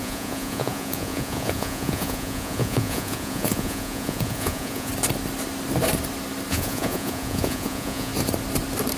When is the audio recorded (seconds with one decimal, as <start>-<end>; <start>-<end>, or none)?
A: 4.9-6.5; 8.1-9.0